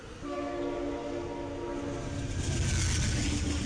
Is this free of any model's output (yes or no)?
yes